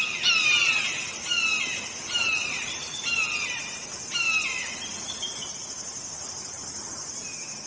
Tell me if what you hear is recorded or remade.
recorded